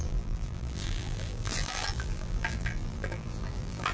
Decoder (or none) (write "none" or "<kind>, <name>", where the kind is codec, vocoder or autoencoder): vocoder, BigVGAN v2